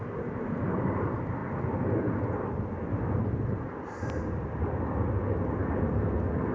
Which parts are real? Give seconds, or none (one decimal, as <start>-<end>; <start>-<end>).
0.0-6.5